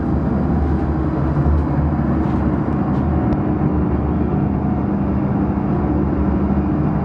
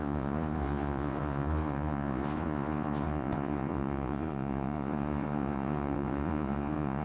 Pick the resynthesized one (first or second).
second